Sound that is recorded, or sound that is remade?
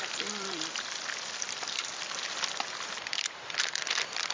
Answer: remade